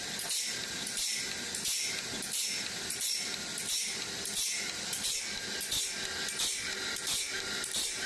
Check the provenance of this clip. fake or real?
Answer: real